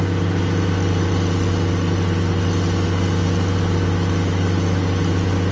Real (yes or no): yes